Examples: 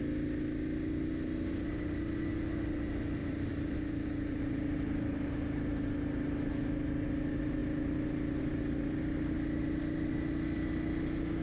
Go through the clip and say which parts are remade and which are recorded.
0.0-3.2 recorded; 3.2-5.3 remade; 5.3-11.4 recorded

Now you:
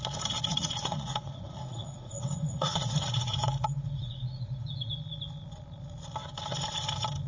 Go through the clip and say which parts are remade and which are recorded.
0.0-0.5 recorded; 0.5-4.9 remade; 4.9-7.3 recorded

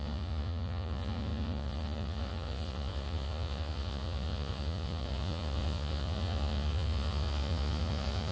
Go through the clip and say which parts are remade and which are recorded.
0.0-8.3 remade

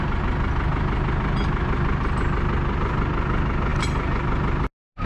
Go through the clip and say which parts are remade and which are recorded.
0.0-5.1 recorded

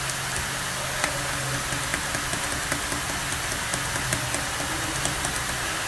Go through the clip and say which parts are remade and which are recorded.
0.0-5.9 recorded

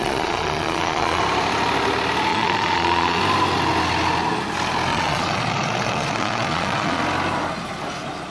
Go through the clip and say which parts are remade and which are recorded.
0.0-1.2 remade; 1.2-2.3 recorded; 2.3-3.2 remade; 3.2-4.9 recorded; 4.9-7.0 remade; 7.0-8.3 recorded